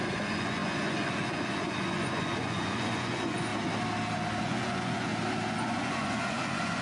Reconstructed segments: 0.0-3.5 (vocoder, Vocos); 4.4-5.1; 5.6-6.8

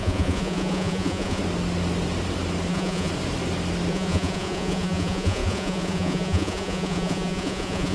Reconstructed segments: 0.0-1.4 (vocoder, Vocos); 2.7-3.1; 3.9-7.9

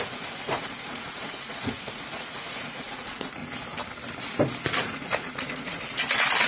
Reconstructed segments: 0.0-3.4 (vocoder, Vocos); 4.8-6.5

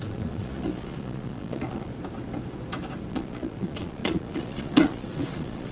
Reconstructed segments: 0.0-1.9 (vocoder, Vocos); 3.1-5.7

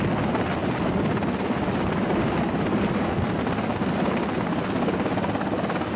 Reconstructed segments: none

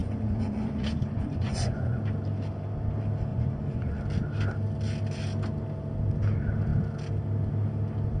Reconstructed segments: 0.0-2.0 (vocoder, Vocos); 3.3-4.0